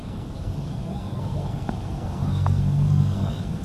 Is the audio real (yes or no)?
no